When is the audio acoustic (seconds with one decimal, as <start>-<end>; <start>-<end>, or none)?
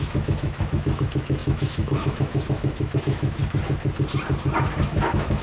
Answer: 3.4-4.8